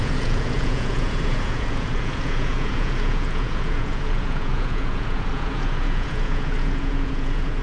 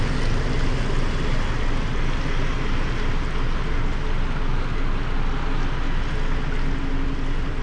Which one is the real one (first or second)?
second